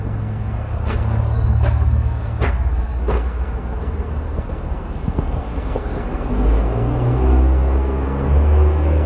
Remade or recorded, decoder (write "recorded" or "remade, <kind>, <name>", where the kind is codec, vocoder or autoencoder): remade, codec, SNAC